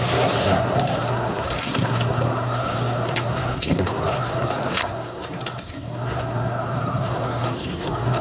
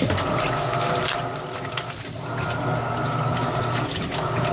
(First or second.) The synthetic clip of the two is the first